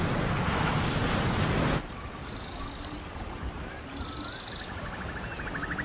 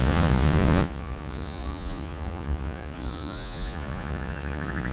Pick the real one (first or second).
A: first